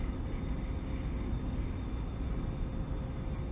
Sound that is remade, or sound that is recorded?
recorded